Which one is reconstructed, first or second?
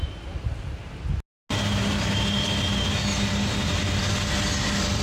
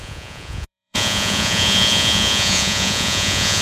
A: second